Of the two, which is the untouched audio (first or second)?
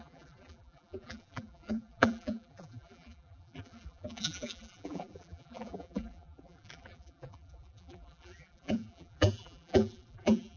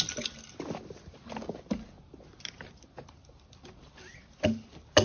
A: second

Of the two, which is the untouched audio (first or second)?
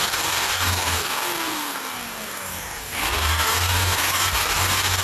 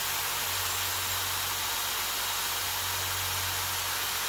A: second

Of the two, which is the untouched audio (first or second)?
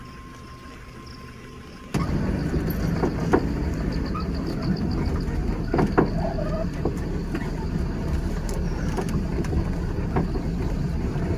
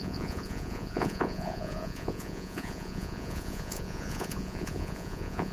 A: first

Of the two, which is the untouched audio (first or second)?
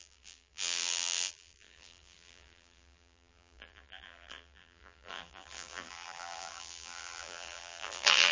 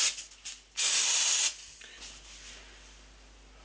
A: second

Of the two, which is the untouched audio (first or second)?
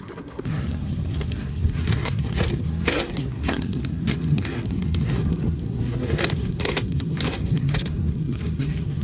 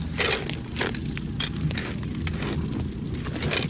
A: second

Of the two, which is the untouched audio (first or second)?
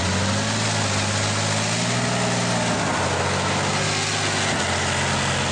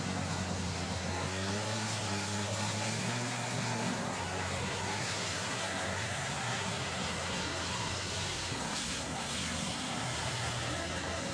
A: first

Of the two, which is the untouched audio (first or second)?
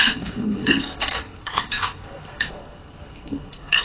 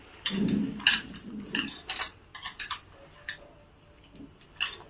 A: second